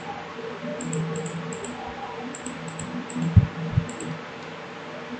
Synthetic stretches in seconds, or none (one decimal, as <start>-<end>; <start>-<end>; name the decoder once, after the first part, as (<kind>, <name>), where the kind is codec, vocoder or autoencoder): none